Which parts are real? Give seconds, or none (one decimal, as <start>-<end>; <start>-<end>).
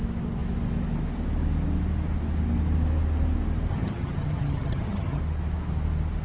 0.0-3.7; 5.2-6.2